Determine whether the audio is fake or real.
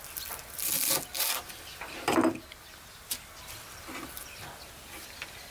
real